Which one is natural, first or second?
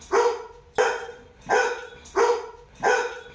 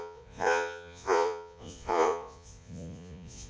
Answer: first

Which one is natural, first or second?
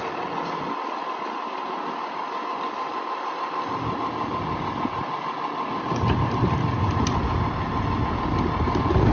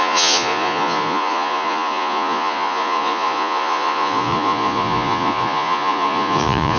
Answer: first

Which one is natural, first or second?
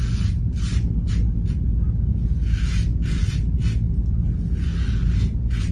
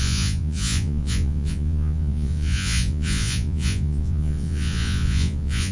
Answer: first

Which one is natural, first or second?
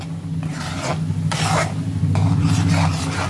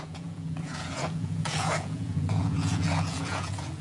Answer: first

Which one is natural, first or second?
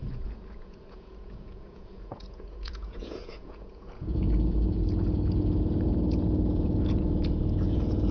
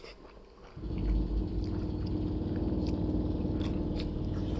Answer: second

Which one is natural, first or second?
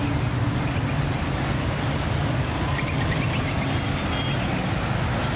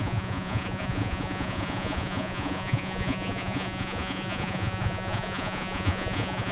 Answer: first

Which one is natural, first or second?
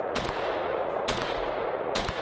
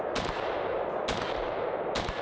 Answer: second